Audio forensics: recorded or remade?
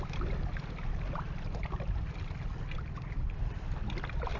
recorded